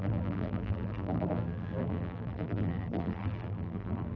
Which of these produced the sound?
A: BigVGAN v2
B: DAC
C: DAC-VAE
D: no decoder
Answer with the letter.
A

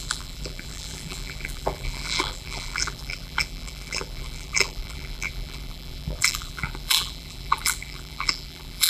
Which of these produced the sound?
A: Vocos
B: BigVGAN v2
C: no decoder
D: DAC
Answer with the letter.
B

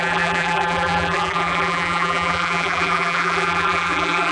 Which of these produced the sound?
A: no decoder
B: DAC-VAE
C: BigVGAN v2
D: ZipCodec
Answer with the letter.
C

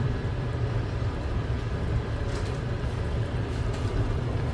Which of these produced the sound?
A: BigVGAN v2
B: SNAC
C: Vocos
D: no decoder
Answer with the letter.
A